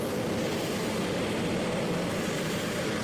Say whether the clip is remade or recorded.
recorded